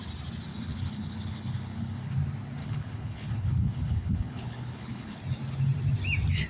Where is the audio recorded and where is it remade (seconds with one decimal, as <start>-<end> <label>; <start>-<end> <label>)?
0.0-0.5 recorded; 0.5-2.1 remade; 2.1-2.6 recorded; 2.6-5.2 remade; 5.2-6.5 recorded

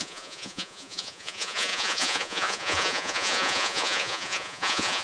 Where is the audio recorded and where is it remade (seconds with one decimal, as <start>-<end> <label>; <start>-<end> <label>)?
0.0-5.0 remade

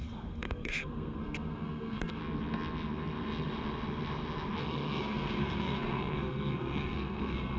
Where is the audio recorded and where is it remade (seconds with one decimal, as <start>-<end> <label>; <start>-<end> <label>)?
0.0-2.2 remade; 2.2-4.6 recorded; 4.6-7.6 remade

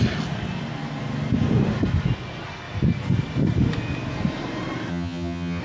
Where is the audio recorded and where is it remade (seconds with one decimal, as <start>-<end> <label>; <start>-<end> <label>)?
0.0-4.9 recorded; 4.9-5.6 remade

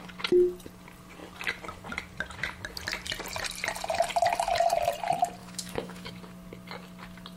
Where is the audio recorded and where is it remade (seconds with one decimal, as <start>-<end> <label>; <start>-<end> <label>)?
0.0-5.4 recorded; 5.4-6.1 remade; 6.1-7.4 recorded

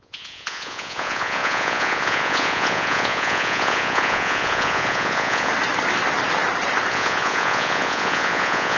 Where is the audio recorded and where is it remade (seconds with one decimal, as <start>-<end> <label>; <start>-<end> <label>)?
0.0-5.5 remade; 5.5-6.9 recorded; 6.9-8.8 remade